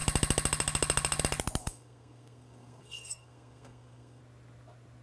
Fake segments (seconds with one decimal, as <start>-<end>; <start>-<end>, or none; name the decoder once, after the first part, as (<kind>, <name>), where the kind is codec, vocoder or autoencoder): 1.6-4.2 (codec, SNAC)